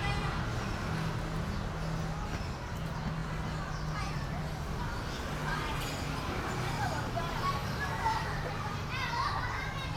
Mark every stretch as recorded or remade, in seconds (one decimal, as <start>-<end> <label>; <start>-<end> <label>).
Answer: 0.0-7.6 recorded; 7.6-8.9 remade; 8.9-10.0 recorded